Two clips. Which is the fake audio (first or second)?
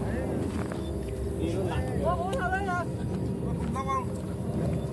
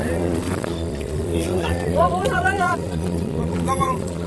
second